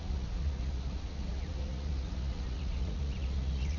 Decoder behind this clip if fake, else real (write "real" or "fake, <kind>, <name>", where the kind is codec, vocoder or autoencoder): fake, vocoder, Vocos